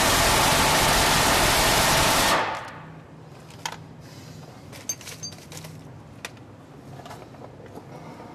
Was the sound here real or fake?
real